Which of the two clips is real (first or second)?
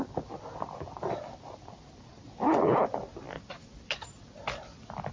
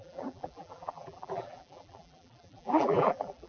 first